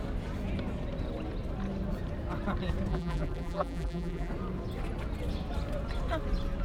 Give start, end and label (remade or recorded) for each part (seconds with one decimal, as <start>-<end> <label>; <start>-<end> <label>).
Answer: 0.0-2.9 recorded; 2.9-4.3 remade; 4.3-6.6 recorded